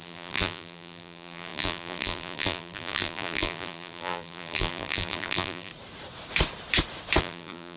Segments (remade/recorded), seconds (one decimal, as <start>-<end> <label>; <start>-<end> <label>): 0.0-5.7 remade; 5.7-7.2 recorded; 7.2-7.8 remade